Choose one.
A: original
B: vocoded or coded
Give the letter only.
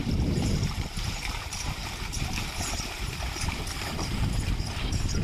B